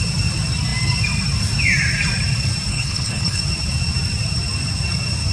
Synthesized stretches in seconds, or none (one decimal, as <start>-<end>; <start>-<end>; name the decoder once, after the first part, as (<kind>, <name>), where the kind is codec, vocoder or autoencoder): 2.7-3.4 (codec, HILCodec)